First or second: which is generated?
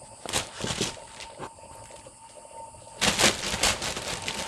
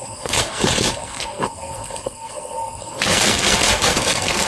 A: second